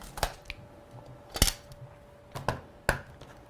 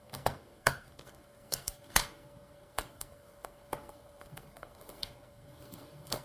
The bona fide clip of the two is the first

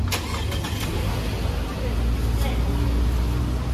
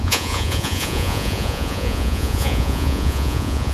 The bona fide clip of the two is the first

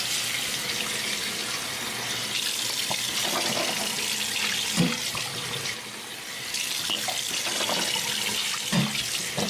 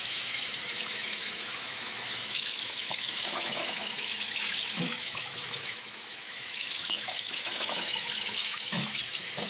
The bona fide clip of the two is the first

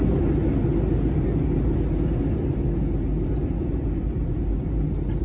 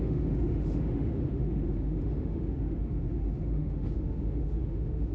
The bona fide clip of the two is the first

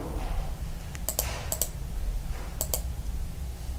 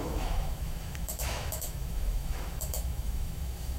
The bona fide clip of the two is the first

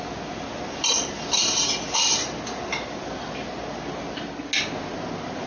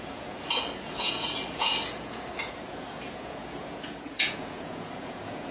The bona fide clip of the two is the first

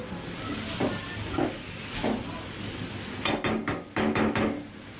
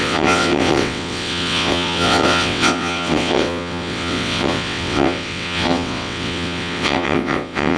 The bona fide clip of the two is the first